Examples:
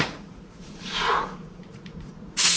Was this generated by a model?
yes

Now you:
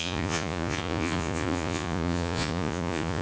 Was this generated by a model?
yes